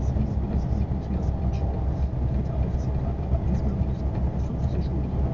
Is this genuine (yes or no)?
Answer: yes